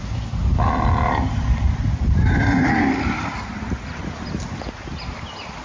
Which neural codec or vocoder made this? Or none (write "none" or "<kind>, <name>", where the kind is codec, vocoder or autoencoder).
none